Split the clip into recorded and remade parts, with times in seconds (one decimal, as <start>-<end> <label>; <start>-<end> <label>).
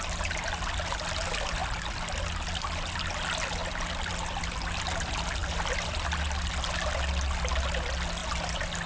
0.0-3.6 recorded; 3.6-4.4 remade; 4.4-8.9 recorded